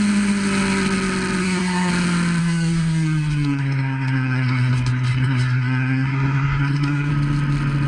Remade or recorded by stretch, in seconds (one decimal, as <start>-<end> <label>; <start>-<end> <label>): 0.0-1.4 recorded; 1.4-1.9 remade; 1.9-2.4 recorded; 2.4-7.1 remade; 7.1-7.9 recorded

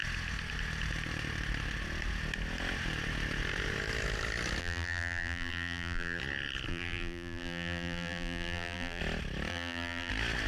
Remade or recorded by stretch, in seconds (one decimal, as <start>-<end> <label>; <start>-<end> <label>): 0.0-4.6 recorded; 4.6-6.2 remade; 6.2-6.7 recorded; 6.7-9.0 remade; 9.0-9.5 recorded; 9.5-10.1 remade; 10.1-10.5 recorded

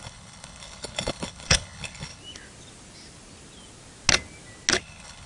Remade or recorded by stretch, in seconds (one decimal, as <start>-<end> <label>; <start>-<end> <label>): 0.0-2.2 remade; 2.2-4.8 recorded; 4.8-5.3 remade

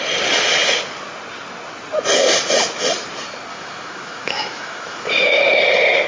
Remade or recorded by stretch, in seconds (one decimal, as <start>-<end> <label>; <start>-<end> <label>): 0.0-3.5 recorded; 3.5-5.4 remade; 5.4-6.1 recorded

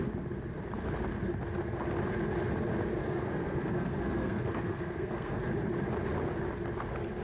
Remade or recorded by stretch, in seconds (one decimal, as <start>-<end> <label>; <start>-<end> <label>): 0.0-3.0 recorded; 3.0-5.4 remade; 5.4-7.2 recorded

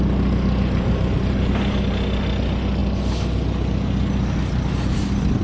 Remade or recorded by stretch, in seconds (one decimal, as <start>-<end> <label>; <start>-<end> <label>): 0.0-5.4 recorded

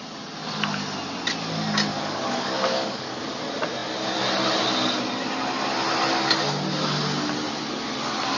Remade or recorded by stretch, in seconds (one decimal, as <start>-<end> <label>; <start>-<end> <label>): 0.0-1.9 recorded; 1.9-3.2 remade; 3.2-8.4 recorded

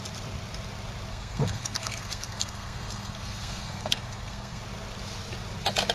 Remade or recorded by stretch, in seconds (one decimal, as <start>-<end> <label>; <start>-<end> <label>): 0.0-1.1 recorded; 1.1-4.6 remade; 4.6-5.9 recorded